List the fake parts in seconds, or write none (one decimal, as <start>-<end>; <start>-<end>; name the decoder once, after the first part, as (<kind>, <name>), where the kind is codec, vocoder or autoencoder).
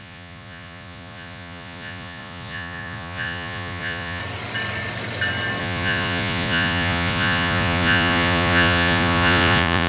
0.0-4.2 (vocoder, Vocos); 5.6-9.9